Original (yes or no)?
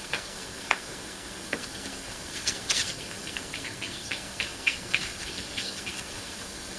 no